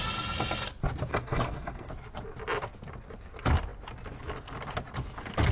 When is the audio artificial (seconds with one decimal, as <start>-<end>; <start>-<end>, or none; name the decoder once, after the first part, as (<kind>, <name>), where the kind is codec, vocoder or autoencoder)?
1.1-1.9 (codec, SNAC)

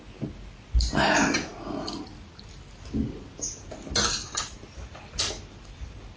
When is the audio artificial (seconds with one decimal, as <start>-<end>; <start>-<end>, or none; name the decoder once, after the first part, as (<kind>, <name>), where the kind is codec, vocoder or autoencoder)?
none

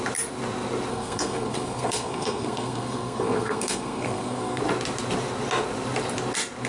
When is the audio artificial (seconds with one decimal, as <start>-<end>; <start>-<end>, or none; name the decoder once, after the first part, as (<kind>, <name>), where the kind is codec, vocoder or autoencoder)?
0.9-4.6 (codec, SNAC)

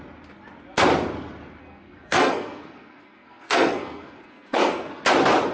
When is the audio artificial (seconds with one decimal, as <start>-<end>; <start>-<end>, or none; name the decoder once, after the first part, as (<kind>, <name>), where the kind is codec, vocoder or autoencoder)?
1.6-4.9 (codec, SNAC)

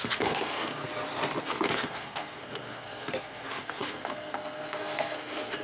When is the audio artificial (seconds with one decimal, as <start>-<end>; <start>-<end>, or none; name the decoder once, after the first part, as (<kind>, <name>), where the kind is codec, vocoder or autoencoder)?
0.0-0.8 (codec, SNAC); 1.4-5.6